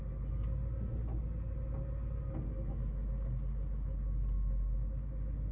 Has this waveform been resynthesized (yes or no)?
no